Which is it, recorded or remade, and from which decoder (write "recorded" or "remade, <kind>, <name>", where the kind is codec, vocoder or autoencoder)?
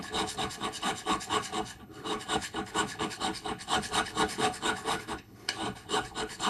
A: remade, codec, HILCodec